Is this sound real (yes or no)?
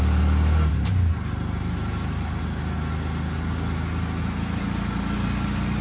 yes